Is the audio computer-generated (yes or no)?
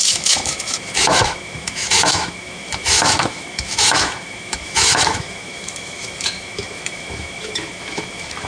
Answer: yes